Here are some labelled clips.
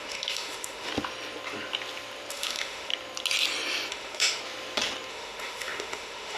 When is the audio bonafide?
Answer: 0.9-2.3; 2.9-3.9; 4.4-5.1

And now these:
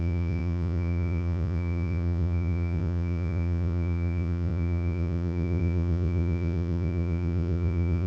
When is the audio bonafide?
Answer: none

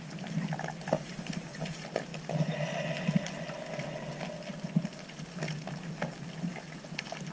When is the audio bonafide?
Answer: 0.0-7.3

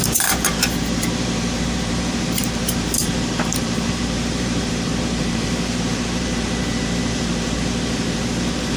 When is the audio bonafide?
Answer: none